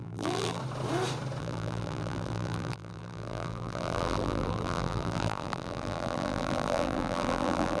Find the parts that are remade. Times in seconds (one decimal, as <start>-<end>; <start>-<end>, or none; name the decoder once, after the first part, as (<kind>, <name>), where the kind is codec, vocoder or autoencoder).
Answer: 0.0-0.6 (vocoder, BigVGAN v2); 1.4-7.8